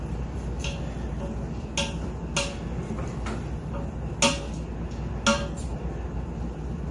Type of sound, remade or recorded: recorded